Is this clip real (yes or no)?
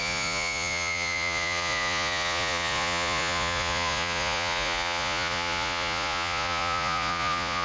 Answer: no